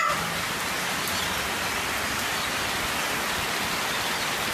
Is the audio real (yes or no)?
yes